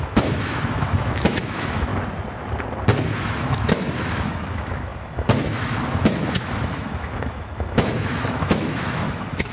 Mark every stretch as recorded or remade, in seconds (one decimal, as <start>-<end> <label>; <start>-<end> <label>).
0.0-1.9 remade; 1.9-3.2 recorded; 3.2-9.5 remade